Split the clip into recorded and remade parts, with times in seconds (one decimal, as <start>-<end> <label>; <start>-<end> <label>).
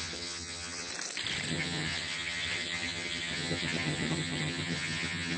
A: 0.0-0.9 remade; 0.9-1.5 recorded; 1.5-5.4 remade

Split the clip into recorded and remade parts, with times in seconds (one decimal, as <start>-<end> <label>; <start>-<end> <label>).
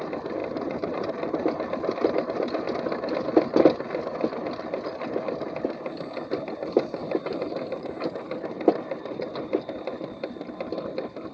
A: 0.0-0.4 recorded; 0.4-2.1 remade; 2.1-7.0 recorded; 7.0-9.5 remade; 9.5-11.3 recorded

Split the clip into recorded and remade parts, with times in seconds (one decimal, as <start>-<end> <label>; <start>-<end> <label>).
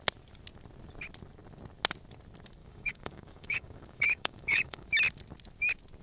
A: 0.0-2.6 recorded; 2.6-4.9 remade; 4.9-6.0 recorded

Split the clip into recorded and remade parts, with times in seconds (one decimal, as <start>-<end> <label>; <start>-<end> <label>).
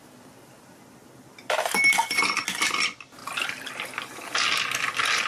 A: 0.0-5.3 recorded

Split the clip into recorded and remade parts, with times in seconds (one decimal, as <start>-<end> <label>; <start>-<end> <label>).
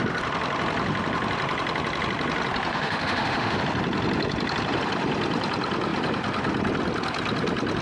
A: 0.0-2.7 recorded; 2.7-3.6 remade; 3.6-7.8 recorded